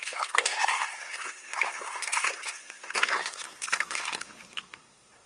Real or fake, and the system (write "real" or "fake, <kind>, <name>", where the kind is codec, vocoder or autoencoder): fake, codec, SNAC